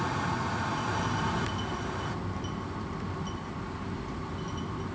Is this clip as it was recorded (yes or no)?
yes